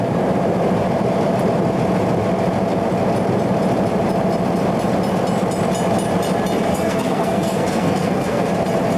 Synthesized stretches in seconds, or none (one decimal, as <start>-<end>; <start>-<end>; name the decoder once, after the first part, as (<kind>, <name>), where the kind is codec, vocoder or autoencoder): 6.7-8.5 (codec, SNAC)